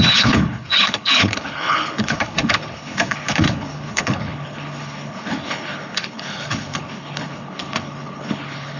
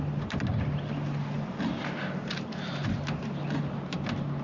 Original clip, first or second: second